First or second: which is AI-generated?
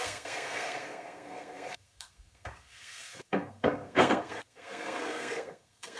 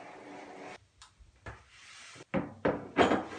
first